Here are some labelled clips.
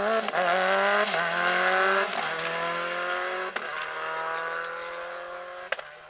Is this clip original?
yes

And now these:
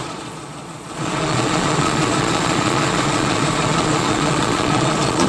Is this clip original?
no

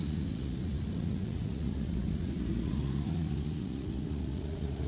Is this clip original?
no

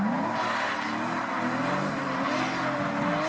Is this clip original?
yes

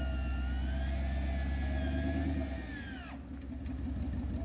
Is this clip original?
yes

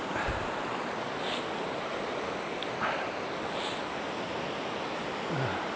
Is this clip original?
yes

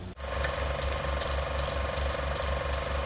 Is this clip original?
yes